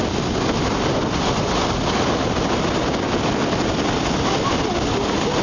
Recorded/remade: recorded